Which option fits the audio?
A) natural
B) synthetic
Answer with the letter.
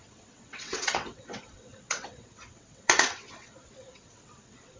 B